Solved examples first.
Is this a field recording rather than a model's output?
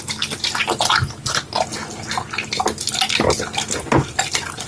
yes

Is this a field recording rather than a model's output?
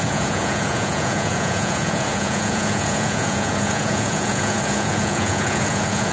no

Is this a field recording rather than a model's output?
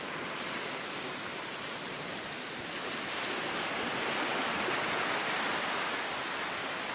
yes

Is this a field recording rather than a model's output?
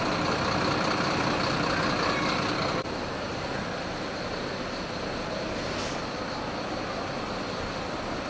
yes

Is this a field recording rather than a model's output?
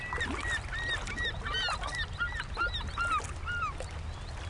yes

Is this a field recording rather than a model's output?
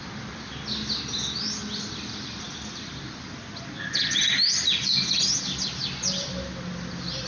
yes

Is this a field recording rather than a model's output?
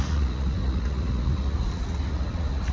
no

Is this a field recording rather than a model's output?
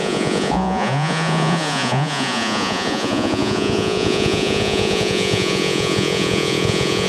no